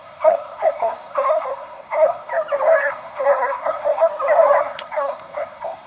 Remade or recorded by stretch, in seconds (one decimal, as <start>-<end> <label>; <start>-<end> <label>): 0.0-2.3 remade; 2.3-2.8 recorded; 2.8-4.1 remade; 4.1-4.6 recorded; 4.6-5.9 remade